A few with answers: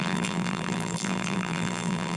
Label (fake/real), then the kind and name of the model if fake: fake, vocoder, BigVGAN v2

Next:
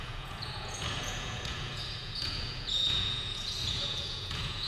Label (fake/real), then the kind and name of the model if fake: fake, vocoder, Vocos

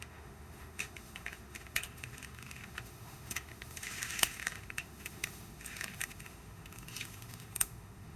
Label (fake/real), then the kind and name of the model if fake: fake, autoencoder, DAC-VAE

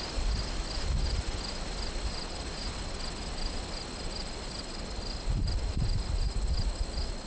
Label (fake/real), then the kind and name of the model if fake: real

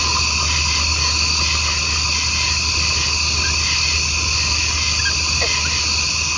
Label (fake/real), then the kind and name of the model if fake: real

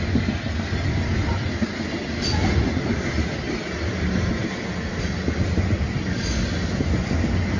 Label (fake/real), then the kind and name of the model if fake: real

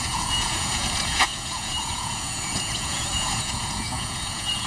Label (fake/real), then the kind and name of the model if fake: fake, vocoder, Vocos